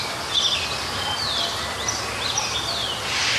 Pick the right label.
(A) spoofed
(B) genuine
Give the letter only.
B